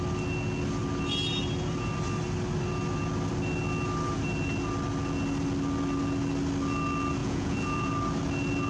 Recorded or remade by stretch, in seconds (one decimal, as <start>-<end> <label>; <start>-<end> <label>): 0.0-7.2 recorded; 7.2-7.9 remade; 7.9-8.7 recorded